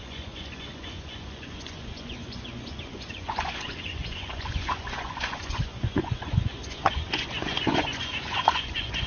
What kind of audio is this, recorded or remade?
remade